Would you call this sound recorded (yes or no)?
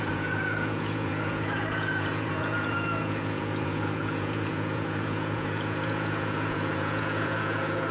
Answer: no